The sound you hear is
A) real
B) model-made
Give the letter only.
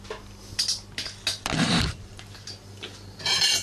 A